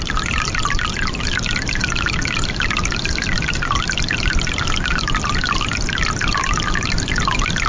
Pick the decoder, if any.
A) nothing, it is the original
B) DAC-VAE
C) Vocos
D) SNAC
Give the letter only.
A